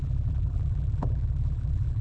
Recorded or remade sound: remade